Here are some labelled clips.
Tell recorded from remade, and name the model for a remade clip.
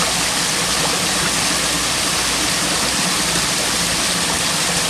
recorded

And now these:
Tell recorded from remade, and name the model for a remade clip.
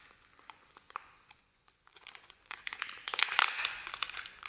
remade, vocoder, Vocos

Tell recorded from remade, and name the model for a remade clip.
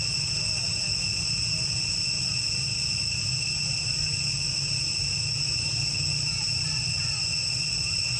recorded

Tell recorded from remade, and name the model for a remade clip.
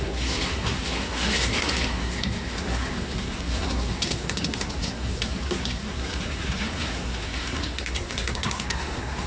remade, codec, SNAC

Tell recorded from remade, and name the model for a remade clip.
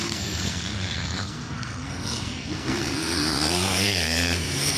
remade, codec, SNAC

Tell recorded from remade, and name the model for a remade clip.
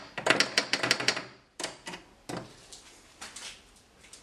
recorded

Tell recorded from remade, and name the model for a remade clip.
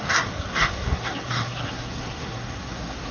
remade, codec, SNAC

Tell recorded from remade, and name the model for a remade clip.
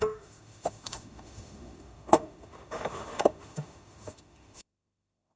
remade, autoencoder, DAC-VAE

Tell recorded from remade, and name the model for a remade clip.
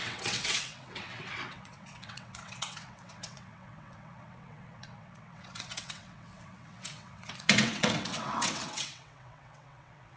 remade, vocoder, WaveNeXt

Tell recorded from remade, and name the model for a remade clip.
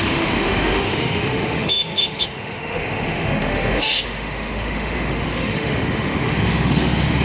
remade, autoencoder, DAC-VAE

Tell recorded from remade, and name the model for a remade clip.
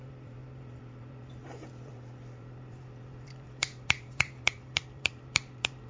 remade, vocoder, BigVGAN v2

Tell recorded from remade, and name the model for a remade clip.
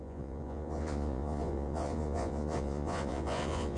remade, vocoder, Vocos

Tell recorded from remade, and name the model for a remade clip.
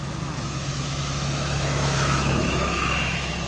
remade, autoencoder, DAC-VAE